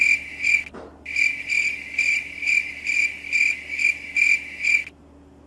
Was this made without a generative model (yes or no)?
yes